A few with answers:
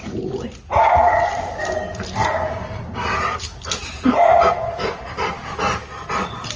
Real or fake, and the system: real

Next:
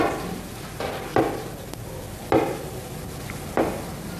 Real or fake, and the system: fake, vocoder, BigVGAN v2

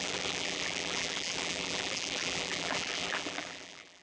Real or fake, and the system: fake, vocoder, BigVGAN v2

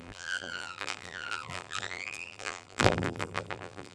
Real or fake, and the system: fake, vocoder, BigVGAN v2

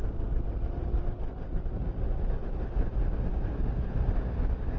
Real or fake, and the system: real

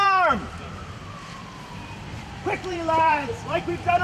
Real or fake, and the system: fake, vocoder, BigVGAN v2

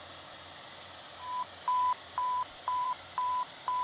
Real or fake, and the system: fake, vocoder, BigVGAN v2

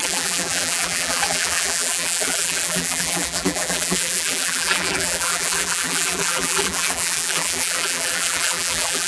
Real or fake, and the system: fake, vocoder, BigVGAN v2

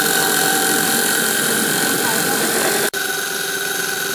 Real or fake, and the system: fake, vocoder, BigVGAN v2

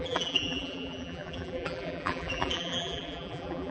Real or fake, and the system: fake, vocoder, BigVGAN v2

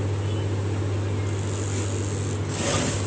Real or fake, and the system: real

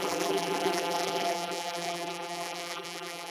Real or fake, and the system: fake, vocoder, BigVGAN v2